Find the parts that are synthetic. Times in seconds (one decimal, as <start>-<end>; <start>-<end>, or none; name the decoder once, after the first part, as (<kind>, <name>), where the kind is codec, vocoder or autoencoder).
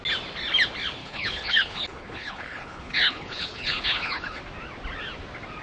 1.0-4.4 (codec, HILCodec)